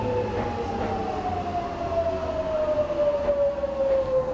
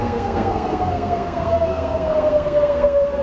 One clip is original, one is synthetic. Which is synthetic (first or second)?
second